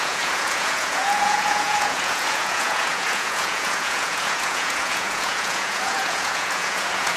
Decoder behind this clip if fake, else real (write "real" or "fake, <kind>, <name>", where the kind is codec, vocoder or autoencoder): fake, vocoder, Vocos